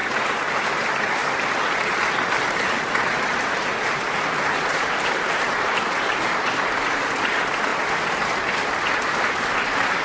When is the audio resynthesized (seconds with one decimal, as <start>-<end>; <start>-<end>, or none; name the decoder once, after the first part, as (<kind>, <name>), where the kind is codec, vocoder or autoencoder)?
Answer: 0.5-1.2 (vocoder, BigVGAN v2); 4.9-5.7; 7.3-7.7; 9.4-10.0